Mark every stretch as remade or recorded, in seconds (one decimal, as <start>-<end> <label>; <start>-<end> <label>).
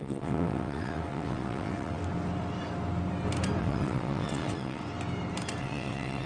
0.0-2.0 remade; 2.0-3.6 recorded; 3.6-4.8 remade; 4.8-5.6 recorded; 5.6-6.3 remade